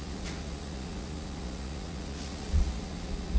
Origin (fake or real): fake